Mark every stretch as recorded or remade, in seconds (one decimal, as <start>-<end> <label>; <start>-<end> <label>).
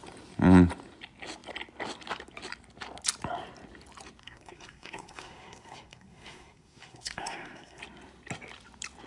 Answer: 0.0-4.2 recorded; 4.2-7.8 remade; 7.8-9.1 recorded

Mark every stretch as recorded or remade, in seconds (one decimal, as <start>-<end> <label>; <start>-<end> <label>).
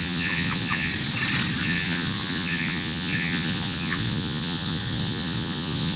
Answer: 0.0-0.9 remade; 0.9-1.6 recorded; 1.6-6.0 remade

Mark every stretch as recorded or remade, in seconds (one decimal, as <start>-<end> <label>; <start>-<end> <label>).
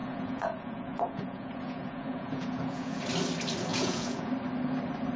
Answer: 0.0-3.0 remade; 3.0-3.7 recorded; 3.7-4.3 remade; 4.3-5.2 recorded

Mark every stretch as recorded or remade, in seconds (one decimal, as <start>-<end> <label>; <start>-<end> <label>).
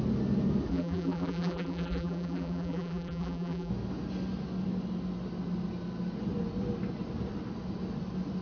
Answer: 0.0-0.7 recorded; 0.7-3.7 remade; 3.7-8.4 recorded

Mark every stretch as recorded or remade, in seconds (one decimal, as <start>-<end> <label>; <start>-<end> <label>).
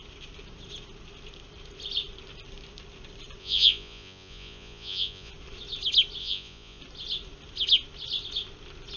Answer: 0.0-3.4 recorded; 3.4-5.3 remade; 5.3-6.2 recorded; 6.2-6.8 remade; 6.8-9.0 recorded